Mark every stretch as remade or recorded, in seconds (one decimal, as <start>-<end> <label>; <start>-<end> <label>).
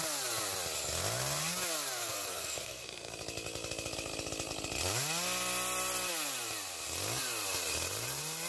0.0-2.0 recorded; 2.0-3.1 remade; 3.1-8.5 recorded